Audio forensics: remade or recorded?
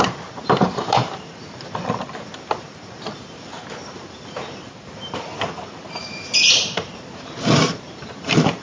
remade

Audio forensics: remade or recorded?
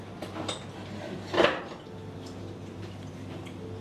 recorded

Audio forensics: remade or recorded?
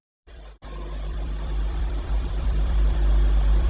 remade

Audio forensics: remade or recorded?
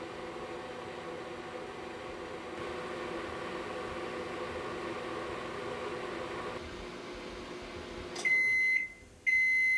recorded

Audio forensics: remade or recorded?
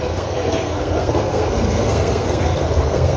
remade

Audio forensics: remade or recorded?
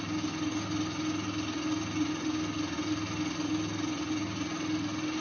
recorded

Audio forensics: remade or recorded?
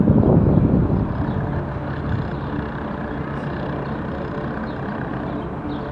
recorded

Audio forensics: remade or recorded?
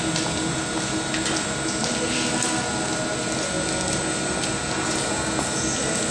recorded